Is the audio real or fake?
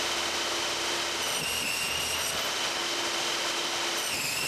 real